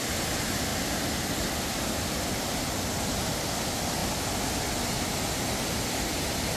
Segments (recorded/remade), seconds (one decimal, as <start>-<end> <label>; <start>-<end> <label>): 0.0-0.7 recorded; 0.7-1.8 remade; 1.8-6.6 recorded